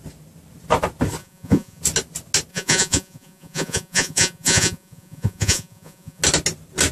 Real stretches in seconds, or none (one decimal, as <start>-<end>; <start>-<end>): 0.0-1.2; 1.8-2.5; 6.2-6.9